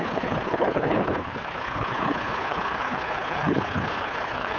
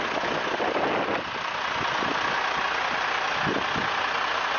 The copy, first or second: first